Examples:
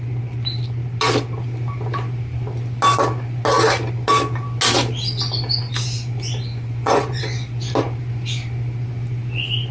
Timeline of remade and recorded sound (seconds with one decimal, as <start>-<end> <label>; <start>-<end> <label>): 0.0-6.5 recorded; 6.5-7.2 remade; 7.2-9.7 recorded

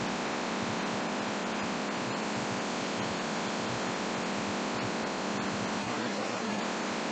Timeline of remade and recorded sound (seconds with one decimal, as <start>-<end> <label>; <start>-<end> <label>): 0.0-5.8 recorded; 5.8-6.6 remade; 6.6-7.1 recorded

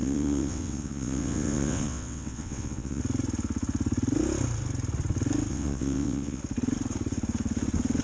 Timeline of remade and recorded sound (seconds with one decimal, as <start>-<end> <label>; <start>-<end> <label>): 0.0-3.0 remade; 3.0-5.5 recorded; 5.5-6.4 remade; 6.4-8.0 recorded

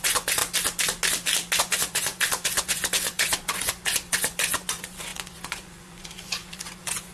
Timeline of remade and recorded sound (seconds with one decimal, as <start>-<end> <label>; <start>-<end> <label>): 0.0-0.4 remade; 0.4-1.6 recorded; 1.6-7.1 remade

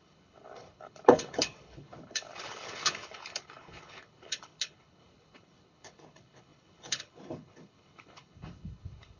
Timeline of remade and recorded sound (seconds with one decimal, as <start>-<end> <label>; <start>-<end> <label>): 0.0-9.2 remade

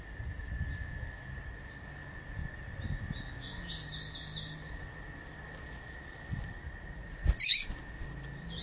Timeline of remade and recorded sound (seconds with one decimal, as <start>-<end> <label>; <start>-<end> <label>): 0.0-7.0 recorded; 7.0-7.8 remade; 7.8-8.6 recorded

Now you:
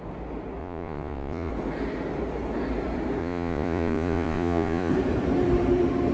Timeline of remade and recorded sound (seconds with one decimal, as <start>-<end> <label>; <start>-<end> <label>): 0.0-0.6 recorded; 0.6-1.5 remade; 1.5-3.2 recorded; 3.2-4.9 remade; 4.9-6.1 recorded

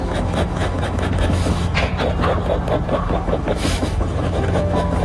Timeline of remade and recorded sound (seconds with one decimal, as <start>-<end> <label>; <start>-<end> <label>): 0.0-1.9 remade; 1.9-2.9 recorded; 2.9-5.0 remade